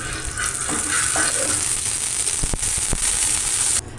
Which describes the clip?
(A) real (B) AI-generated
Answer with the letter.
A